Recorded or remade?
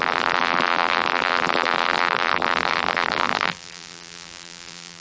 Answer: remade